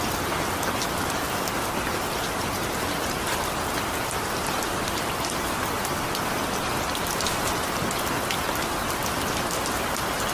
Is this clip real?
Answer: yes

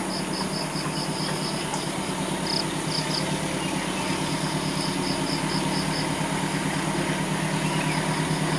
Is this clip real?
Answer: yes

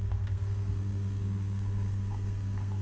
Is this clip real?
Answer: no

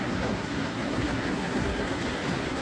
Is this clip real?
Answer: no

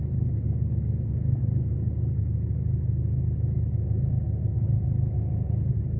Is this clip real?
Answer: yes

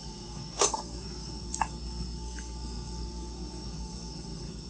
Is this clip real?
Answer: no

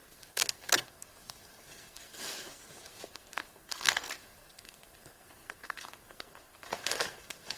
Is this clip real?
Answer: no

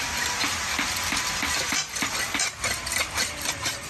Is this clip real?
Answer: yes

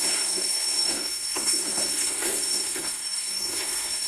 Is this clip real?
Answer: no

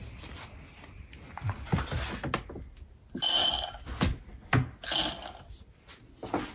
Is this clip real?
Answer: yes